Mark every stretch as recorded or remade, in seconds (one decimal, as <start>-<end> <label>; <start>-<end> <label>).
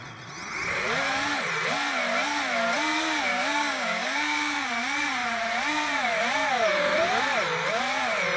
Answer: 0.0-3.3 recorded; 3.3-4.7 remade; 4.7-8.4 recorded